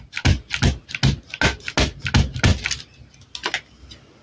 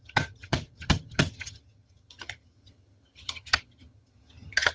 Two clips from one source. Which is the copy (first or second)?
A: second